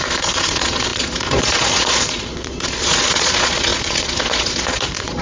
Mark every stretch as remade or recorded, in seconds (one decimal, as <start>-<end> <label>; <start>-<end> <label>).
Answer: 0.0-5.2 remade